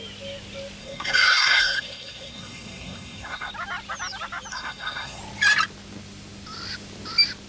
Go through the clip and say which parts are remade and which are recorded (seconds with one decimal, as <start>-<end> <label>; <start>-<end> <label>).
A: 0.0-0.8 recorded; 0.8-3.5 remade; 3.5-4.5 recorded; 4.5-5.2 remade; 5.2-7.5 recorded